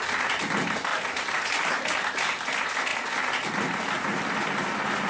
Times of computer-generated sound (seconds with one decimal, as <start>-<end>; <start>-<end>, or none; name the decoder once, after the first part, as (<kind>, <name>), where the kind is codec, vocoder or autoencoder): none